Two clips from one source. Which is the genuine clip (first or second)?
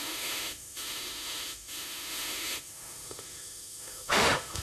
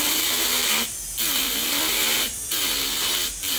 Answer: second